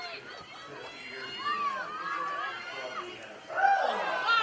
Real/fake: real